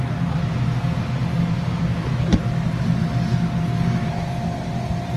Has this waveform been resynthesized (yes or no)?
no